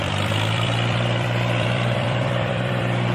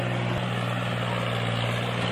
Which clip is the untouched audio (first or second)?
second